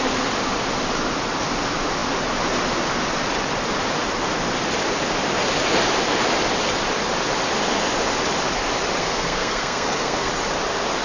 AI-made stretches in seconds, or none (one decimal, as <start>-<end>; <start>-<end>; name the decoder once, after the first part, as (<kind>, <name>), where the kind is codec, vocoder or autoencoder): 9.0-10.3 (codec, SNAC)

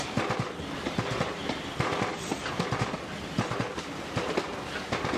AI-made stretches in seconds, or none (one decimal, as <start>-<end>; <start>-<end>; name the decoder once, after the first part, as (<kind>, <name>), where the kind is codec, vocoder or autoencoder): none

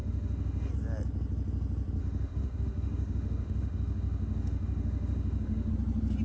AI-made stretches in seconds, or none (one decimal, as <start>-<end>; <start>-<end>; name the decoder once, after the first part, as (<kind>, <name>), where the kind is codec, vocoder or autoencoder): 0.0-0.7 (autoencoder, DAC-VAE); 2.0-5.7

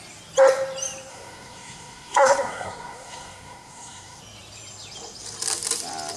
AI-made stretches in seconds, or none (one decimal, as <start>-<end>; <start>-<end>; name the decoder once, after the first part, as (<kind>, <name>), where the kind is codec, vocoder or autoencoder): 1.1-4.2 (codec, SNAC)

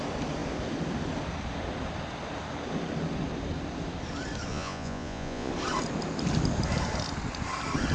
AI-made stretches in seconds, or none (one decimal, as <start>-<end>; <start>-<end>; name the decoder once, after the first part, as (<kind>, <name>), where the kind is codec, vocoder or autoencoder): 4.5-5.5 (vocoder, Vocos)